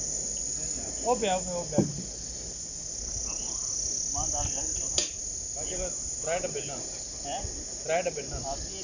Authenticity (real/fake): real